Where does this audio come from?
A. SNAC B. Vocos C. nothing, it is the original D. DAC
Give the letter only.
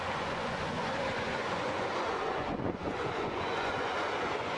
B